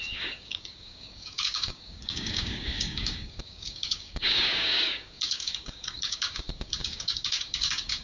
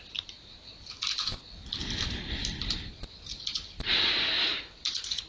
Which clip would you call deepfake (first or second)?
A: first